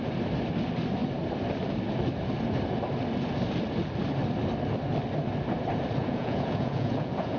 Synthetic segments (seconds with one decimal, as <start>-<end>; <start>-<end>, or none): 6.0-7.4